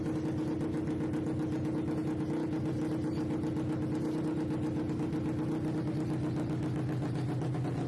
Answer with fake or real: real